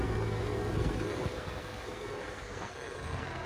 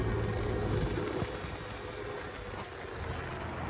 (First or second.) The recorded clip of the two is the second